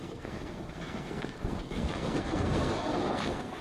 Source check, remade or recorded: remade